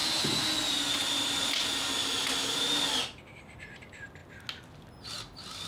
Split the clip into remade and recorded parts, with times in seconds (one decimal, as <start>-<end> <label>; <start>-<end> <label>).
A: 0.0-5.7 recorded